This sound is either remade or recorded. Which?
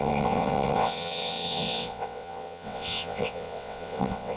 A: remade